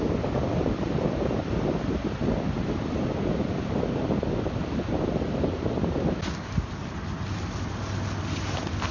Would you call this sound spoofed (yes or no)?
no